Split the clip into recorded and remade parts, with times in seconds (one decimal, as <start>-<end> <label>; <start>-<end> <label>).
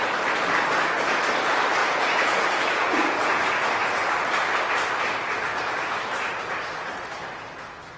0.0-1.8 recorded; 1.8-3.4 remade; 3.4-8.0 recorded